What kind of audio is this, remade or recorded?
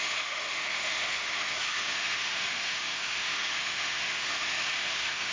remade